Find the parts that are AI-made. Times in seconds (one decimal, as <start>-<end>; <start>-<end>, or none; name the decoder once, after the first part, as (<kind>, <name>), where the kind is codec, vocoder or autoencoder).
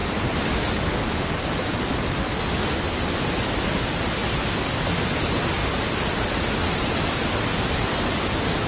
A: none